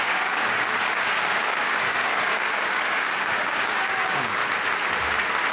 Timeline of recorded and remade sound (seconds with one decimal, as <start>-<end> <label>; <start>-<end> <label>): 0.0-4.4 remade; 4.4-5.5 recorded